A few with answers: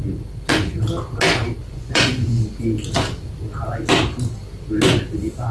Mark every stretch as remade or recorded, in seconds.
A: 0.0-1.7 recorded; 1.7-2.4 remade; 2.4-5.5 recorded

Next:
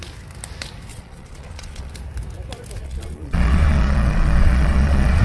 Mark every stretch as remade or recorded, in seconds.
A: 0.0-0.9 recorded; 0.9-1.9 remade; 1.9-2.8 recorded; 2.8-5.2 remade

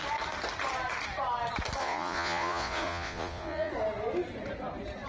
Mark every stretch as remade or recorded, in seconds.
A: 0.0-1.8 recorded; 1.8-3.7 remade; 3.7-5.1 recorded

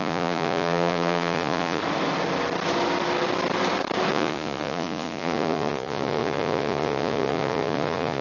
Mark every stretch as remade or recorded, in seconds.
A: 0.0-1.8 remade; 1.8-4.1 recorded; 4.1-8.2 remade

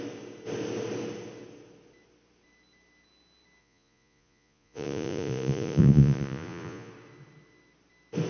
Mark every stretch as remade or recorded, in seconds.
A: 0.0-3.6 recorded; 3.6-6.9 remade; 6.9-8.3 recorded

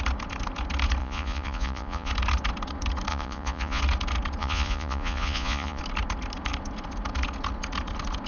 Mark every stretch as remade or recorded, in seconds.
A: 0.0-1.0 recorded; 1.0-2.1 remade; 2.1-3.1 recorded; 3.1-3.8 remade; 3.8-4.4 recorded; 4.4-5.8 remade; 5.8-8.3 recorded